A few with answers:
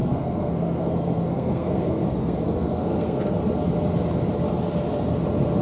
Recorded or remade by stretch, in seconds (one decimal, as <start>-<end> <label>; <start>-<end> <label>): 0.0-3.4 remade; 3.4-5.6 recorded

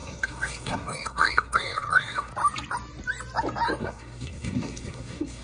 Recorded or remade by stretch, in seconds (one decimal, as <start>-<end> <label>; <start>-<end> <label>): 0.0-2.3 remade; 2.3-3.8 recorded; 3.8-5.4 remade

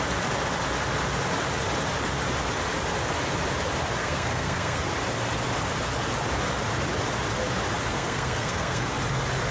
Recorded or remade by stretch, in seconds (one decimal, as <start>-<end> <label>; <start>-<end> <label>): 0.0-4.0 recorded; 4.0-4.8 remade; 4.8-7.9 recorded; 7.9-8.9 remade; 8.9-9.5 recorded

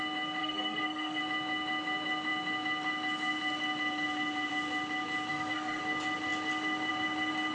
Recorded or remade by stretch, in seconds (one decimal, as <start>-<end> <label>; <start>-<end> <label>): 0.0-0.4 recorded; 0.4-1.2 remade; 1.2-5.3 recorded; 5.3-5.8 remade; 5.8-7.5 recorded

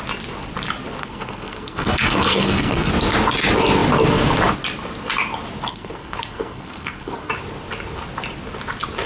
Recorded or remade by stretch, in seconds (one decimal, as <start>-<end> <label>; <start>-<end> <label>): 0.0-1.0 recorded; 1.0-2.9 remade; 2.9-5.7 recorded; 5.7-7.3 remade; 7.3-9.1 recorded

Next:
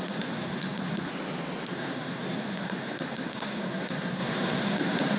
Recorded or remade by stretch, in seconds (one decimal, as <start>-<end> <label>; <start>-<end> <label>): 0.0-1.1 remade; 1.1-1.7 recorded; 1.7-5.2 remade